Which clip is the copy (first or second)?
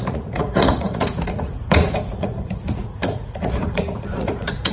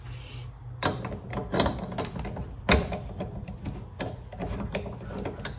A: first